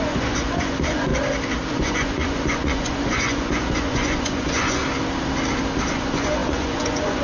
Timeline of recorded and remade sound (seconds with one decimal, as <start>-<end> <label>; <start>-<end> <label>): 0.0-1.1 remade; 1.1-1.7 recorded; 1.7-4.8 remade; 4.8-5.9 recorded; 5.9-7.2 remade